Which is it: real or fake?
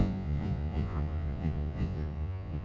fake